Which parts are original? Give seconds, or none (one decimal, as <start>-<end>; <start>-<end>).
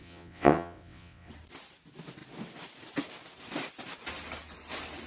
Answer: 1.3-5.1